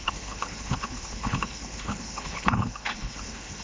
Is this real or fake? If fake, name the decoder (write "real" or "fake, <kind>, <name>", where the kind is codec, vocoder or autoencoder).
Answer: fake, codec, HILCodec